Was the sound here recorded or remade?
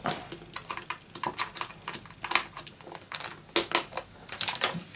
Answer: recorded